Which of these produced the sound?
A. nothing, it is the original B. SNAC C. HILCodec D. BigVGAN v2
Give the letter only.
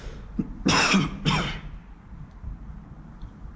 A